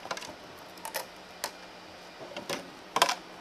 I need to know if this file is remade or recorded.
recorded